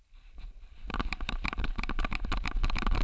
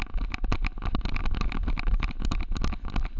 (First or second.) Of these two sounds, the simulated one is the first